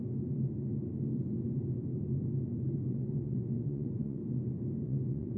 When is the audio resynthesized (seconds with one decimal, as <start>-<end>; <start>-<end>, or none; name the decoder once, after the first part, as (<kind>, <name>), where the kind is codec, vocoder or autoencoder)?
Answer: 2.9-4.2 (vocoder, Vocos); 4.8-5.4